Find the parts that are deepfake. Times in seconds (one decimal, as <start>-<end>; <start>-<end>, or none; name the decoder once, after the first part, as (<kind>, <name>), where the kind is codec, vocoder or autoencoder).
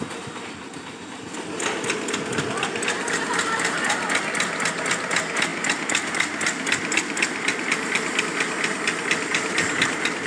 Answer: none